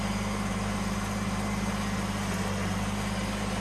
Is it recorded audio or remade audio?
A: recorded